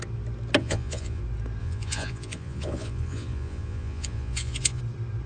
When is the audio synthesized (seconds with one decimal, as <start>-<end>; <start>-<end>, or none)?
0.6-1.2; 1.6-4.8

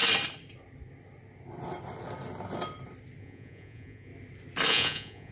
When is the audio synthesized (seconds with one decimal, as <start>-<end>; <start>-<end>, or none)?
3.2-4.1; 4.7-5.3

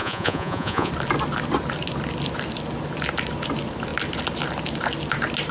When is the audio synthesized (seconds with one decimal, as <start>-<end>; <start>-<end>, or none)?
0.0-0.9

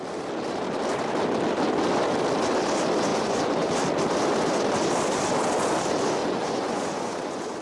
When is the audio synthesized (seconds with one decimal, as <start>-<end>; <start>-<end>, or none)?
3.1-3.7; 6.2-7.6

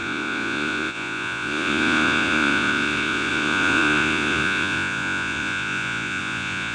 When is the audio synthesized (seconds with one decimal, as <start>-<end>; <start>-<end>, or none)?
0.0-6.7